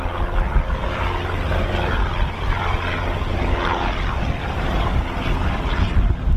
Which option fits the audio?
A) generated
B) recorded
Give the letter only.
B